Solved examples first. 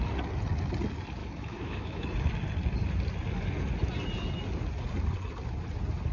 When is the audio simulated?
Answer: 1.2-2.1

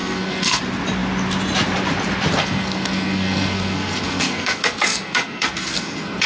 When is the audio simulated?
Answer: 0.0-0.6; 2.4-6.3

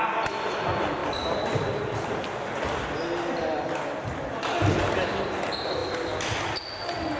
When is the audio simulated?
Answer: none

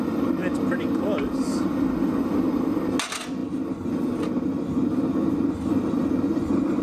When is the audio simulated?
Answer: 3.4-6.8

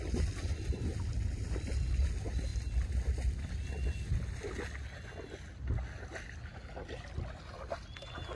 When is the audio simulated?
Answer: none

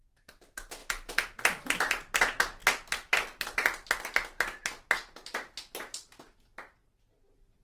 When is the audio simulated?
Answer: 2.6-4.4

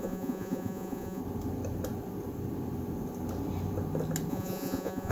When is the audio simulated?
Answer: 0.0-1.2; 4.3-5.1

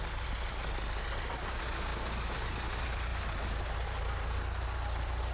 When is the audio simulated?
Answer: 3.1-4.4